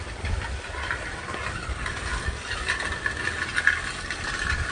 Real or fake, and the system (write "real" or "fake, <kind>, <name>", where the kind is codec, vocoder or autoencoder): real